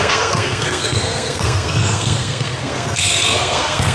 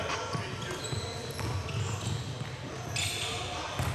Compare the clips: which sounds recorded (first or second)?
second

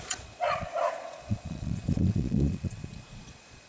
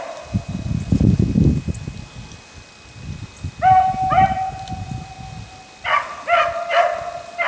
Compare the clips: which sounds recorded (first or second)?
second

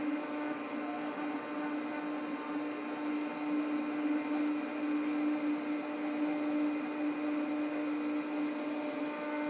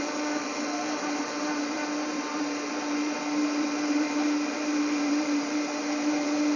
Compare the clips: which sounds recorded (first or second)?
first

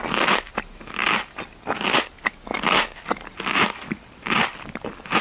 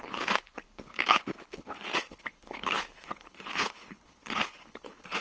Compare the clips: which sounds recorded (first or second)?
first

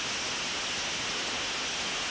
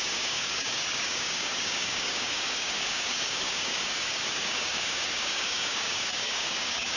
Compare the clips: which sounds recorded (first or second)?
first